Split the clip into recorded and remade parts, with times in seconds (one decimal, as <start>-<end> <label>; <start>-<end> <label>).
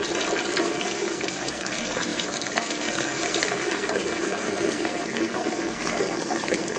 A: 0.0-0.6 recorded; 0.6-6.8 remade